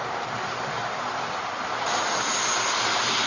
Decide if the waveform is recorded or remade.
recorded